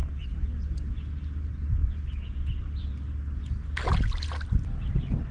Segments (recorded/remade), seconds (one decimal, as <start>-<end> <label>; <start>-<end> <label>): 0.0-5.3 recorded